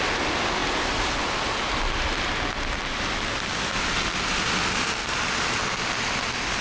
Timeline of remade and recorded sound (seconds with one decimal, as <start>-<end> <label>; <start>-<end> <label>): 0.0-5.0 recorded; 5.0-5.9 remade; 5.9-6.6 recorded